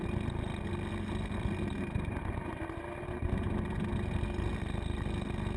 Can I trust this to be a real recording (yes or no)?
yes